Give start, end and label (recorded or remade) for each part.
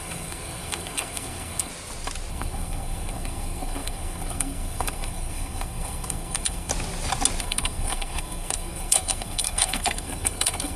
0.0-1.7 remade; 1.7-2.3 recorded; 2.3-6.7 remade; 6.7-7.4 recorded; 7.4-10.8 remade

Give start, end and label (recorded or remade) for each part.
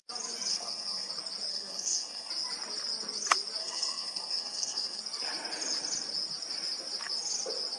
0.0-0.5 recorded; 0.5-1.1 remade; 1.1-1.5 recorded; 1.5-2.3 remade; 2.3-3.6 recorded; 3.6-5.0 remade; 5.0-7.8 recorded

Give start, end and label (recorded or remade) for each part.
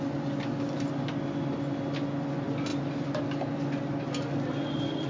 0.0-5.1 recorded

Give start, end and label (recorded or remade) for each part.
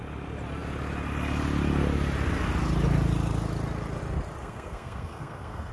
0.0-4.4 recorded; 4.4-5.7 remade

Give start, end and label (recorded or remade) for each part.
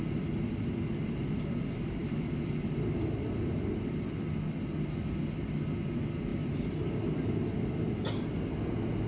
0.0-9.1 recorded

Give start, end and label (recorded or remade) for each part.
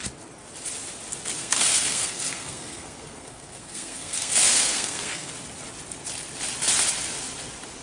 0.0-1.4 recorded; 1.4-5.3 remade; 5.3-7.8 recorded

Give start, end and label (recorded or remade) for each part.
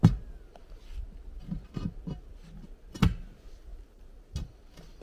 0.0-5.0 recorded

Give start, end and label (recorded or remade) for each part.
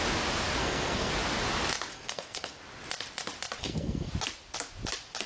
0.0-0.6 recorded; 0.6-1.1 remade; 1.1-1.9 recorded; 1.9-2.6 remade; 2.6-3.6 recorded; 3.6-4.1 remade; 4.1-5.3 recorded